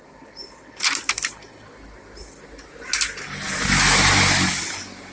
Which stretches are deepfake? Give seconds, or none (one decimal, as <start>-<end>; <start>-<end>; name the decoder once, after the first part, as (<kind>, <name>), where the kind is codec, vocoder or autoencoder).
none